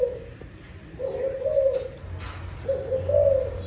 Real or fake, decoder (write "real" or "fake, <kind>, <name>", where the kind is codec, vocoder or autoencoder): real